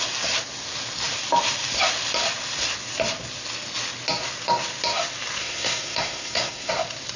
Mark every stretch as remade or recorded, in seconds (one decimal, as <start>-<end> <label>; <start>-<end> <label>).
0.0-5.4 recorded; 5.4-6.7 remade; 6.7-7.2 recorded